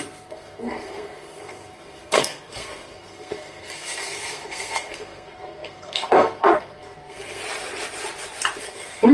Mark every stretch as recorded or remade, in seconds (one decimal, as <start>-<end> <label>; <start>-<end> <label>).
0.0-7.4 remade; 7.4-8.6 recorded; 8.6-9.1 remade